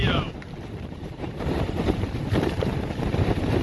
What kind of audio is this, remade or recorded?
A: remade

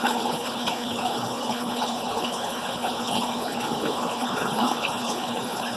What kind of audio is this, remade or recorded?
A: remade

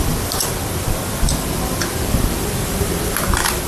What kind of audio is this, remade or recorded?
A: remade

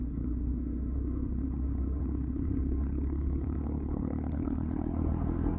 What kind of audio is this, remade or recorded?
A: remade